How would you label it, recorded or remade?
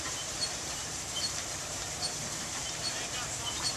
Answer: remade